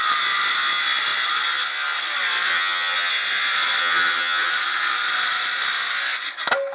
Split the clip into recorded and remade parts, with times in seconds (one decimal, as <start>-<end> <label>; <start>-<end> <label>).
0.0-2.5 recorded; 2.5-3.1 remade; 3.1-3.8 recorded; 3.8-4.5 remade; 4.5-6.7 recorded